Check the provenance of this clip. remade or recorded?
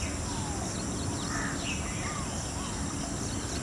recorded